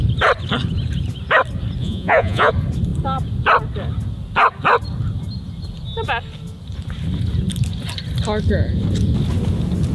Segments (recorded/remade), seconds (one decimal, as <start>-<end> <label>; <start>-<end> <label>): 0.0-1.8 recorded; 1.8-2.5 remade; 2.5-9.9 recorded